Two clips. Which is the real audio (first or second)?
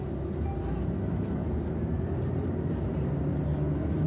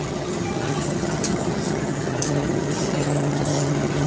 first